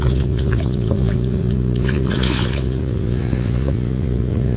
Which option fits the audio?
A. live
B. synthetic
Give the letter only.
B